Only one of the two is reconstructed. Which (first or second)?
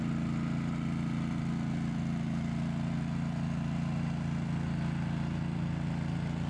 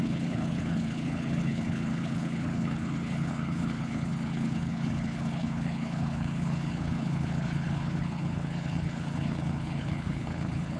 second